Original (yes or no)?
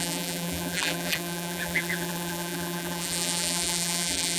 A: no